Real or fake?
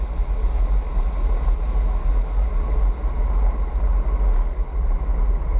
real